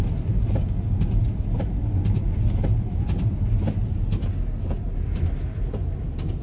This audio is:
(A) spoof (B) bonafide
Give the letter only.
B